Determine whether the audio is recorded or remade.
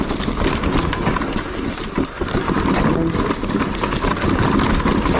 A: recorded